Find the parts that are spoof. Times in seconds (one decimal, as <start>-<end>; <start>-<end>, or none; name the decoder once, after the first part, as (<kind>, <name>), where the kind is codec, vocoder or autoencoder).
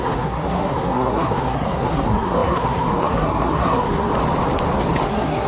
0.0-4.1 (codec, SNAC); 5.1-5.5